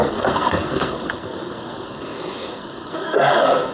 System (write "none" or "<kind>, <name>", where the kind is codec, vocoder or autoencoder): codec, SNAC